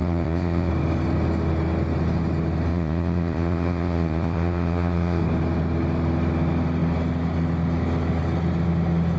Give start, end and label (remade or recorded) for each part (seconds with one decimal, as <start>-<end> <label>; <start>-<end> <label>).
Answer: 0.0-0.7 remade; 0.7-2.7 recorded; 2.7-5.2 remade; 5.2-9.2 recorded